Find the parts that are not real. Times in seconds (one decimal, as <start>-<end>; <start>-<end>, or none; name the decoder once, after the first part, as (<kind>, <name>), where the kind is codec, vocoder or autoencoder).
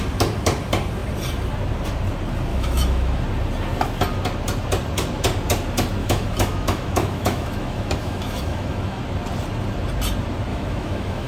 2.5-3.2 (autoencoder, DAC-VAE); 6.0-9.0; 10.5-11.3